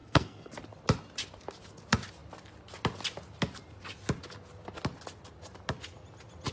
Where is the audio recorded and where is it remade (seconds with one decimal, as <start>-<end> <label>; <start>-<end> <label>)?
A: 0.0-0.5 remade; 0.5-6.5 recorded